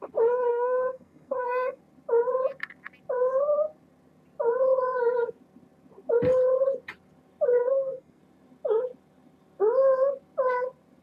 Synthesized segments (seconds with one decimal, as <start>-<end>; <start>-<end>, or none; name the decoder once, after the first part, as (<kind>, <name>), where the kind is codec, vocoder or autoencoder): 0.5-1.8 (codec, SNAC); 7.6-8.2